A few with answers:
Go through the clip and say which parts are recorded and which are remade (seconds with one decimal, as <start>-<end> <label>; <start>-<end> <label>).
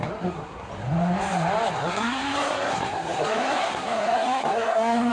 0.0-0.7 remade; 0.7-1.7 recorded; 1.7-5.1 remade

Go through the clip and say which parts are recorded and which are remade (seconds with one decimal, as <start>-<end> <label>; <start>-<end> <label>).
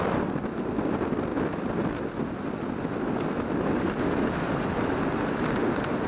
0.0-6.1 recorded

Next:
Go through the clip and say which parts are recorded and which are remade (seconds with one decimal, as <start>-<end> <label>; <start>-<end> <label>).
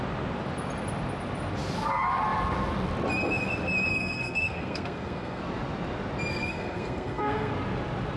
0.0-3.9 recorded; 3.9-5.4 remade; 5.4-6.3 recorded; 6.3-7.5 remade; 7.5-8.2 recorded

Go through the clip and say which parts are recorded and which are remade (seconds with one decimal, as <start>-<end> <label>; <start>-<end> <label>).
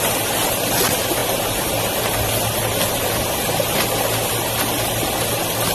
0.0-5.7 recorded